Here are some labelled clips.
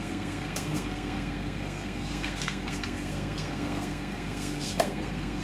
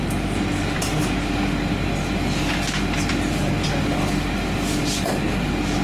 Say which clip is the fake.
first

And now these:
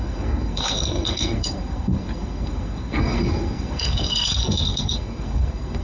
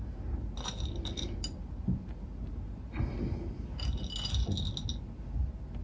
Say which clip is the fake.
first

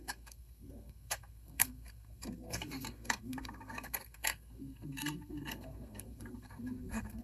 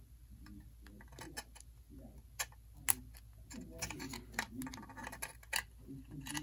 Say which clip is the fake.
first